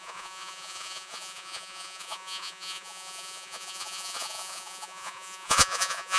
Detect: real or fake fake